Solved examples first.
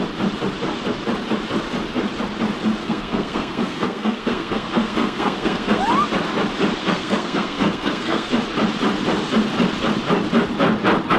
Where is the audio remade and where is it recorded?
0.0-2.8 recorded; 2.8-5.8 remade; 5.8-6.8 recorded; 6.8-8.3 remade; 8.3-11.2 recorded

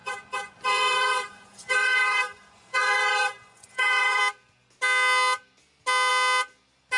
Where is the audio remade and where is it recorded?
0.0-4.2 remade; 4.2-7.0 recorded

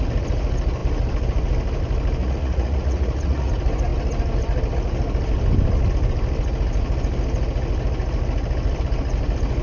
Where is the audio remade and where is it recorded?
0.0-2.2 recorded; 2.2-3.5 remade; 3.5-9.6 recorded